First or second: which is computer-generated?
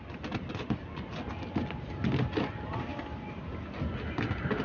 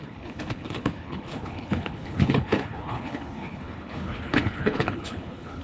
second